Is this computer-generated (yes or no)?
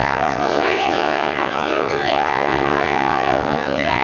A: yes